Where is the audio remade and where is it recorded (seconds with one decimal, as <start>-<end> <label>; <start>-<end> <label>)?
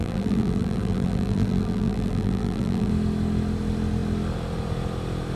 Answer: 0.0-2.9 remade; 2.9-5.4 recorded